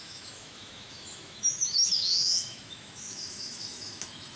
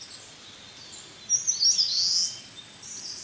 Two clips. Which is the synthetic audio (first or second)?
first